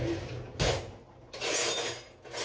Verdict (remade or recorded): recorded